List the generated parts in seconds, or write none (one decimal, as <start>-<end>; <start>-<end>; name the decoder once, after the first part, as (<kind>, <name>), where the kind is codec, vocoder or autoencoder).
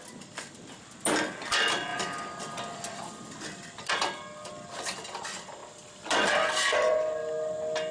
5.6-6.9 (vocoder, BigVGAN v2)